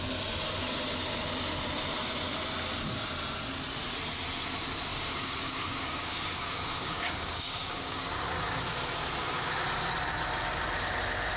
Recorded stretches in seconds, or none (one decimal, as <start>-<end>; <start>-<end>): 0.0-4.9; 8.3-11.4